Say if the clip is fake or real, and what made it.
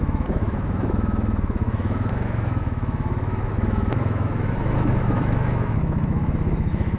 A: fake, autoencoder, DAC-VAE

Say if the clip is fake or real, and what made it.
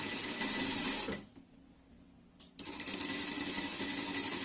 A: real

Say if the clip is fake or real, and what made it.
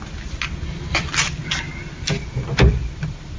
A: real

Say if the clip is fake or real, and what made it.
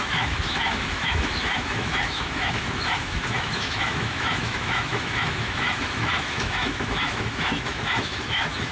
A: fake, autoencoder, DAC-VAE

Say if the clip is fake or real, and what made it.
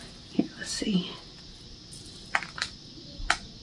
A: real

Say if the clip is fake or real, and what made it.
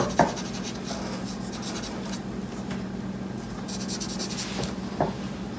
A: real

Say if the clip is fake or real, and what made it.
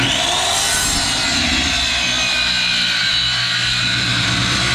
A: real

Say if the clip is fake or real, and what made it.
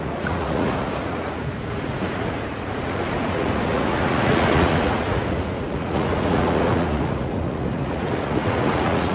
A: fake, vocoder, Vocos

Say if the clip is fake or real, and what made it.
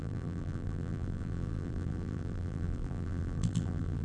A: fake, vocoder, BigVGAN v2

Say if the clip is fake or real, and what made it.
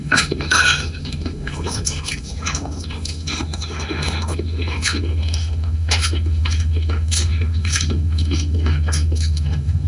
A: fake, autoencoder, DAC-VAE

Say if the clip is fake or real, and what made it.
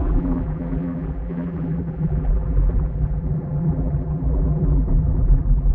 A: fake, vocoder, BigVGAN v2